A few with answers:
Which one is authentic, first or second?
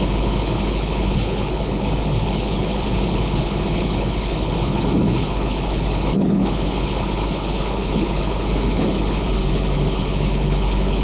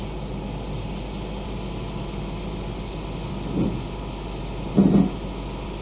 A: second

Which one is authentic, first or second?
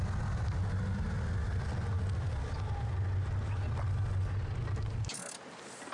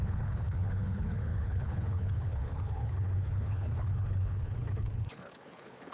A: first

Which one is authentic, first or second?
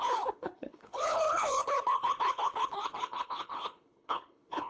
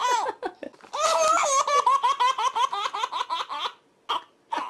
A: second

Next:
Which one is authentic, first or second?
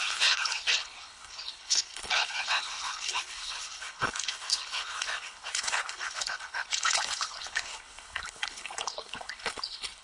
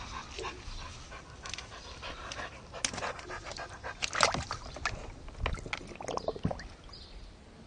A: second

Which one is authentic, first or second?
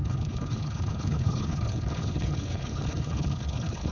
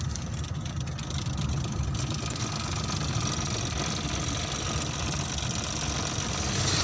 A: second